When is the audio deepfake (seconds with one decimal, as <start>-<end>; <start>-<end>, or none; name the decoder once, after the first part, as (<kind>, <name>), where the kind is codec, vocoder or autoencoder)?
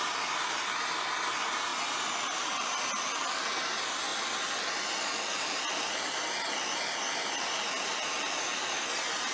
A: 1.7-2.8 (vocoder, BigVGAN v2)